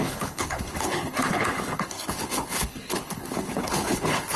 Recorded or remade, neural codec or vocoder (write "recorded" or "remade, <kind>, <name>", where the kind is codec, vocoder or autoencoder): remade, codec, HILCodec